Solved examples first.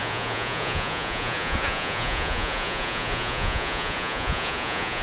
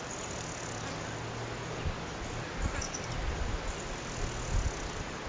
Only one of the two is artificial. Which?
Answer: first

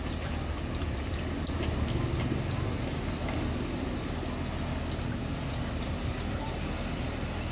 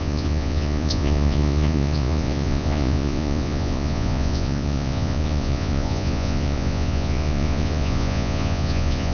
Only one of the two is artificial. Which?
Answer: second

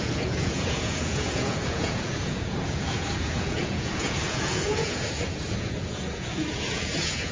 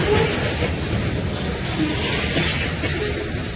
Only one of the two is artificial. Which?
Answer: first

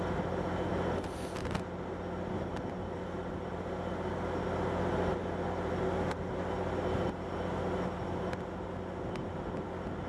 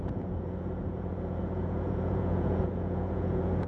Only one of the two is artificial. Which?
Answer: second